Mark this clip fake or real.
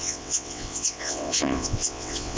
fake